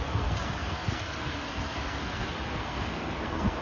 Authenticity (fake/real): fake